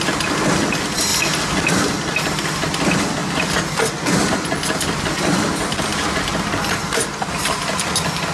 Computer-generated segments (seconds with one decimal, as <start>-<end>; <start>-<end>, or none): 5.9-7.4